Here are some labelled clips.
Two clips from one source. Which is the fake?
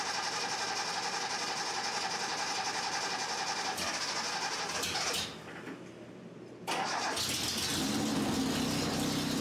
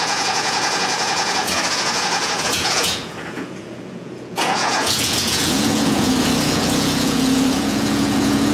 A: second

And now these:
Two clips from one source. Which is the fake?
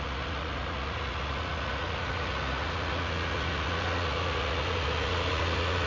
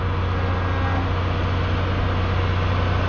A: first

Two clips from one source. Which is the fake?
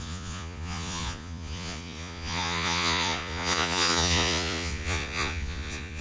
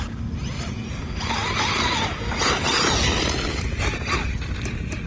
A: first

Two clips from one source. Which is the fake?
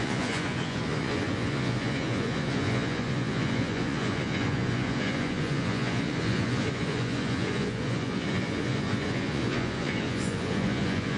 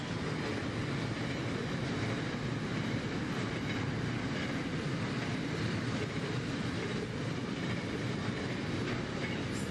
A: first